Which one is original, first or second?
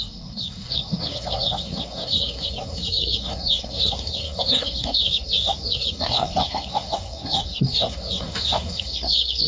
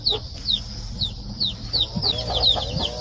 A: second